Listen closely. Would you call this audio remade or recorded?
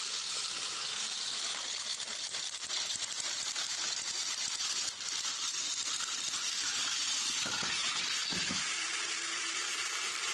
remade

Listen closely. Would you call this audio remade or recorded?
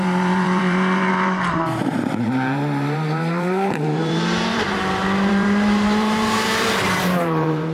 remade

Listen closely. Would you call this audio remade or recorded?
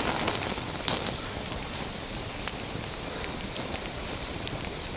remade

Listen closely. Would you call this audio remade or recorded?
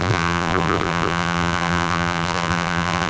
remade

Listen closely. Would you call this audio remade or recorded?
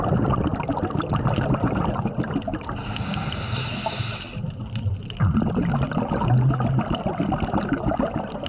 recorded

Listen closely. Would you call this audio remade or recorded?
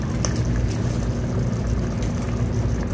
recorded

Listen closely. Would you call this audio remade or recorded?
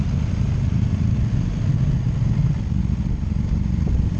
recorded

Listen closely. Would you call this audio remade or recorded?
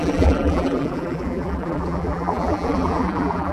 remade